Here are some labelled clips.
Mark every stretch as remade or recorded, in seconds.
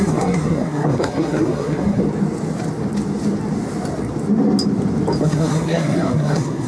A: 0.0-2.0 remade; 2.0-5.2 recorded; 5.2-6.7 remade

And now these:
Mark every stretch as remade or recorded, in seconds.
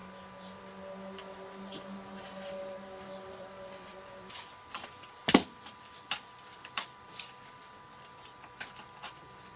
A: 0.0-3.3 recorded; 3.3-9.6 remade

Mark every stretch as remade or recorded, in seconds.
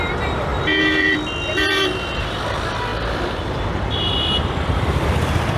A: 0.0-5.6 remade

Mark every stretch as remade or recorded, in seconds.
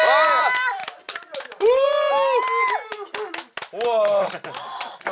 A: 0.0-5.1 recorded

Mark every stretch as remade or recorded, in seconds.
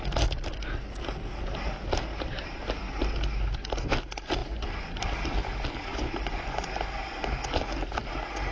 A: 0.0-4.4 recorded; 4.4-5.0 remade; 5.0-5.9 recorded; 5.9-6.7 remade; 6.7-8.5 recorded